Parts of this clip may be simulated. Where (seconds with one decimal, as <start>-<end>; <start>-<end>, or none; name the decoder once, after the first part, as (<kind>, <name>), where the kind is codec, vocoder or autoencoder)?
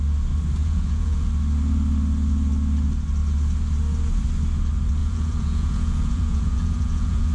0.6-1.3 (vocoder, Vocos); 5.0-7.3